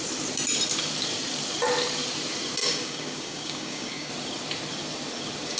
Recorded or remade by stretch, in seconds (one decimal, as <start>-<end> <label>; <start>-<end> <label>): 0.0-2.6 recorded; 2.6-4.1 remade; 4.1-5.6 recorded